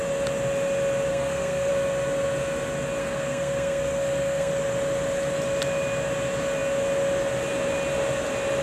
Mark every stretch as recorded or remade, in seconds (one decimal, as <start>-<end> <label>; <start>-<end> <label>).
0.0-1.1 recorded; 1.1-1.7 remade; 1.7-3.0 recorded; 3.0-4.5 remade; 4.5-8.6 recorded